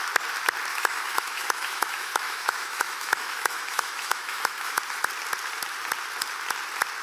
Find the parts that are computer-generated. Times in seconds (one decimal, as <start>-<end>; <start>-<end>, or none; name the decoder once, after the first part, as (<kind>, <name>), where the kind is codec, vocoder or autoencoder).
0.7-4.8 (autoencoder, DAC-VAE)